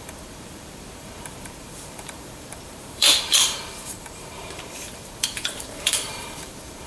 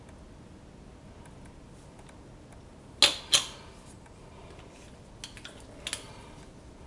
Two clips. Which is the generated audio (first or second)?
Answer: first